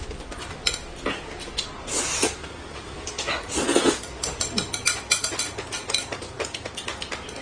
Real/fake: real